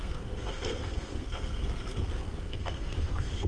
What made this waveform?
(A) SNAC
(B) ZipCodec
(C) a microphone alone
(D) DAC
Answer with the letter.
A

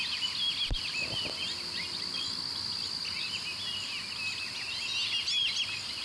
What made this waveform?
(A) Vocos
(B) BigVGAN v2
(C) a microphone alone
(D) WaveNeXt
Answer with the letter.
C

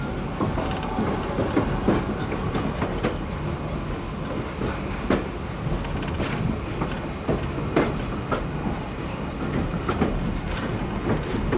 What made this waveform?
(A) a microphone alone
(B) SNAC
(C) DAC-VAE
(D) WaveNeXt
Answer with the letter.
A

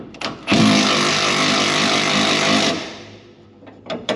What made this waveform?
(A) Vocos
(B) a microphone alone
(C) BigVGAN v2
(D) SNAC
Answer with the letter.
C